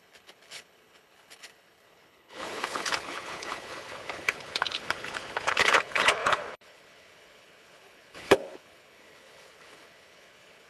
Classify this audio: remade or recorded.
remade